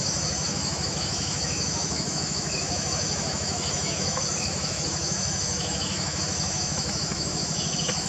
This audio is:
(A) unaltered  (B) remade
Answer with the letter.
B